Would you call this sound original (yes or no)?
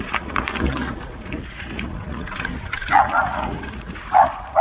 no